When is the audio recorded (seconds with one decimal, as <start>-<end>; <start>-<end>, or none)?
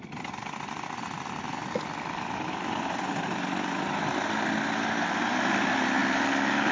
1.6-5.2; 6.0-6.7